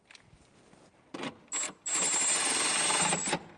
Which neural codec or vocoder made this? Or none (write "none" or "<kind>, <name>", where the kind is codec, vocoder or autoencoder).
none